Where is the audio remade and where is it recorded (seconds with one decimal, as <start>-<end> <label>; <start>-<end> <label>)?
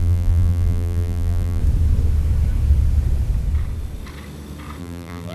0.0-1.6 remade; 1.6-4.8 recorded; 4.8-5.3 remade